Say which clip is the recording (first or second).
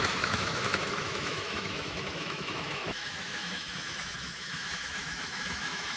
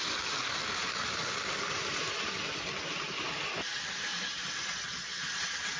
second